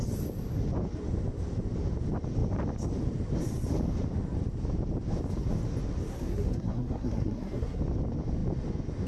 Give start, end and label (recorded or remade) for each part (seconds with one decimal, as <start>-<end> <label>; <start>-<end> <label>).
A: 0.0-6.1 recorded; 6.1-7.8 remade; 7.8-9.1 recorded